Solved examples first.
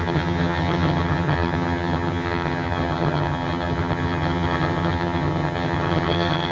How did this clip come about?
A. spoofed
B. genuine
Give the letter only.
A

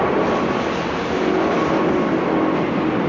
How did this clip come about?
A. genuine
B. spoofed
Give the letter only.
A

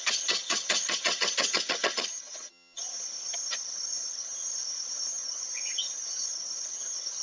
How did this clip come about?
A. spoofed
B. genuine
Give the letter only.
A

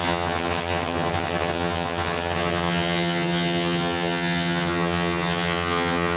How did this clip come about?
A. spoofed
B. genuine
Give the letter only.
A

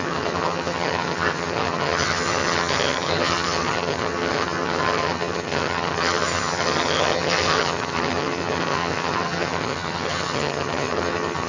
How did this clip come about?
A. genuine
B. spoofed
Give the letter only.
B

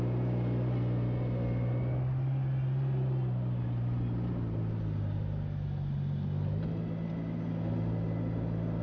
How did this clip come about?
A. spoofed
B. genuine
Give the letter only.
B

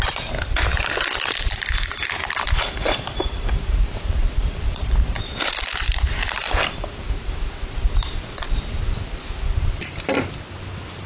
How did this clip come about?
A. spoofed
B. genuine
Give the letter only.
B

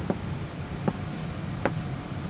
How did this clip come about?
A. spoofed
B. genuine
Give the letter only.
B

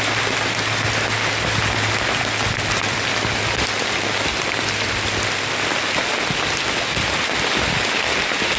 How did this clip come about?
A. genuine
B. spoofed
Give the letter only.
A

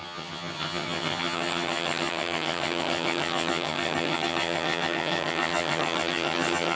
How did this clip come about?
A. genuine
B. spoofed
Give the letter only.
B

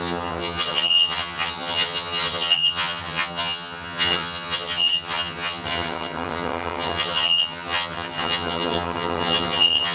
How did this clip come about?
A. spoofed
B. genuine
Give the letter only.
A